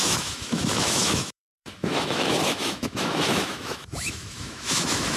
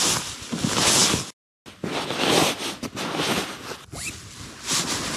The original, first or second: second